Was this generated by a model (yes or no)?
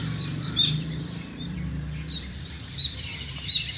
yes